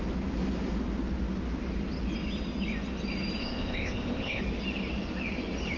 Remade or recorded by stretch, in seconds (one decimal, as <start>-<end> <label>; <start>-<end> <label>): 0.0-3.4 recorded; 3.4-4.4 remade; 4.4-5.8 recorded